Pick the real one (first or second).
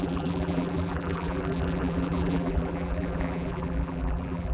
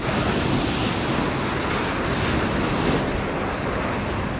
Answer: second